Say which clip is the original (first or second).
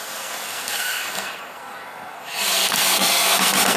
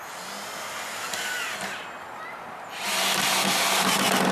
second